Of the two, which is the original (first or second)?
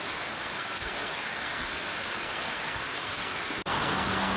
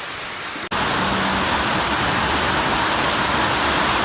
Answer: second